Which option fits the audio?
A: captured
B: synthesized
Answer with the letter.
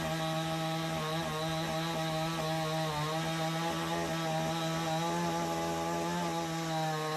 A